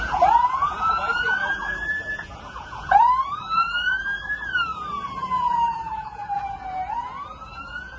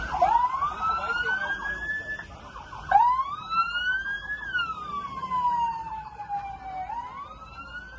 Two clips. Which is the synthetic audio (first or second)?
first